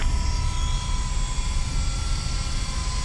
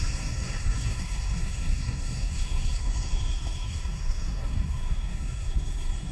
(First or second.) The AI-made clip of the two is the second